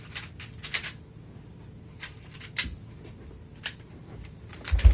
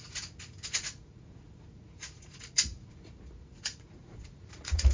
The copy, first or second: second